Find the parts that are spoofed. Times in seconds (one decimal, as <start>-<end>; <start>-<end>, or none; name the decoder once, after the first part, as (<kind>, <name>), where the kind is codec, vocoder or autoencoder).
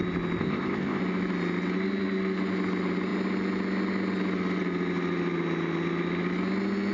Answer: 0.4-1.0 (codec, ZipCodec)